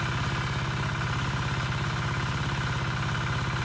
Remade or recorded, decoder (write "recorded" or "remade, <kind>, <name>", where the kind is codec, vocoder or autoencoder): recorded